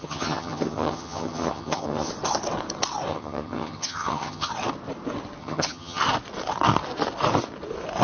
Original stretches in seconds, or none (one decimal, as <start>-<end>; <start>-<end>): 2.1-3.1; 4.5-5.4; 6.0-8.0